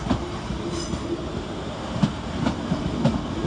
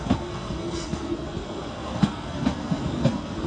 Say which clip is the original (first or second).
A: first